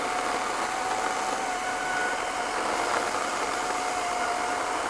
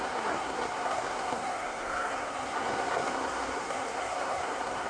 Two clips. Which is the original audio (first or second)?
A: first